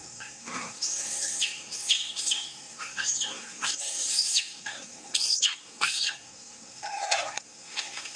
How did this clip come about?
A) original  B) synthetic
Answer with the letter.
B